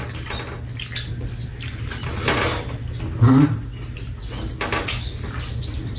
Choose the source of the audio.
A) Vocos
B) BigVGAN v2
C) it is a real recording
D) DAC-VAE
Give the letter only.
C